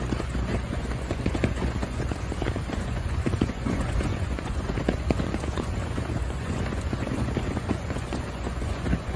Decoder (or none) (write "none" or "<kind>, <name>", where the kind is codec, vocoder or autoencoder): vocoder, Vocos